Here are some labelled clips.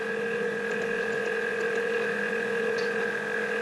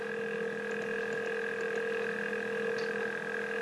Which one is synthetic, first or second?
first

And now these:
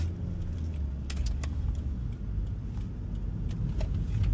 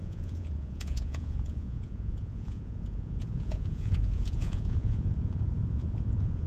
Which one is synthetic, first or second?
second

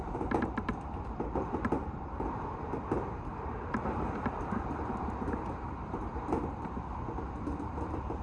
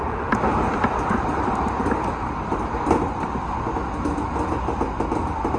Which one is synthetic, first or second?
first